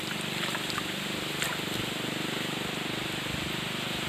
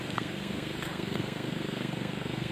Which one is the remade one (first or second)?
second